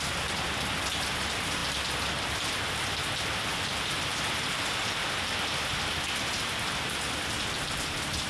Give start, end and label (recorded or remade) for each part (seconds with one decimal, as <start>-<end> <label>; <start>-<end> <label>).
0.0-8.3 recorded